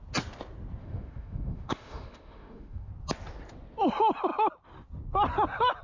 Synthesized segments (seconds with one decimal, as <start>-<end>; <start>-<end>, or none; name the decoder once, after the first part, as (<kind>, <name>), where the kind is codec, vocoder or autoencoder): 0.8-2.9 (autoencoder, DAC-VAE)